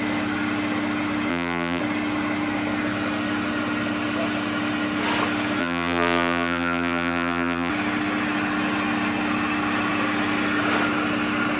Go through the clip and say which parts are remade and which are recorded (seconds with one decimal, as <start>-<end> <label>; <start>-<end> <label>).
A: 0.0-1.3 recorded; 1.3-1.8 remade; 1.8-5.6 recorded; 5.6-7.7 remade; 7.7-11.6 recorded